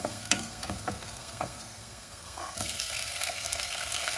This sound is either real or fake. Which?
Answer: fake